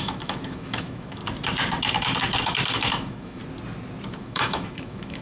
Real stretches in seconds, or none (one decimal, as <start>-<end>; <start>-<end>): 1.2-2.7; 3.4-4.1